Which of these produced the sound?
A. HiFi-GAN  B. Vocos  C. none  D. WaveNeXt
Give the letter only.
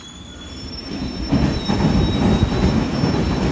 C